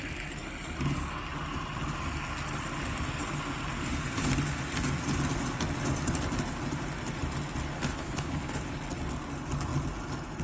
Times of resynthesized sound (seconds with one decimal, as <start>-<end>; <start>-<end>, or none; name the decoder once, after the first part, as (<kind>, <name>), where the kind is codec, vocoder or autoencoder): 7.9-8.5 (codec, HILCodec)